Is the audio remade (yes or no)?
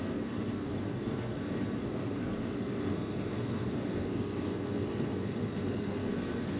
yes